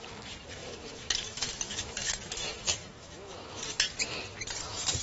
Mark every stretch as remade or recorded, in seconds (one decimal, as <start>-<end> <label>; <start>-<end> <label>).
0.0-0.6 recorded; 0.6-3.6 remade; 3.6-5.0 recorded